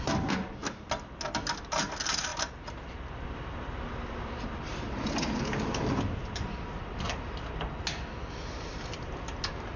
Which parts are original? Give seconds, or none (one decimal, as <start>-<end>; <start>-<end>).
0.0-9.8

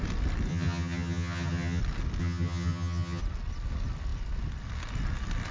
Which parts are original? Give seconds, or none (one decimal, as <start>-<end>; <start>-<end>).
0.0-0.5; 1.8-2.2; 3.2-5.5

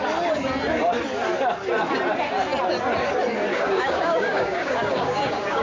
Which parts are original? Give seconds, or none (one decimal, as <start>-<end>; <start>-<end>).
0.0-3.5

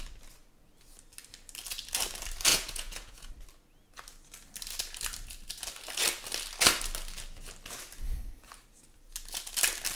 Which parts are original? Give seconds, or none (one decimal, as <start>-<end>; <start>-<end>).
0.0-2.5; 3.3-9.9

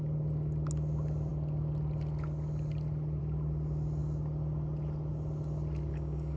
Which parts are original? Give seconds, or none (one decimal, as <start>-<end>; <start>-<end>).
0.0-5.9

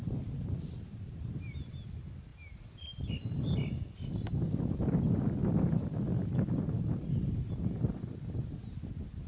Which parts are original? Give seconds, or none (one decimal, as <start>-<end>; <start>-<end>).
1.7-9.3